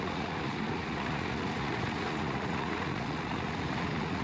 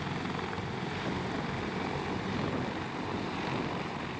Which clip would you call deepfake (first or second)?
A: first